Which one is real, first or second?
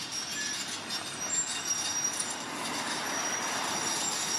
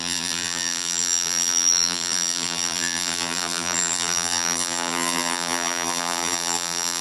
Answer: first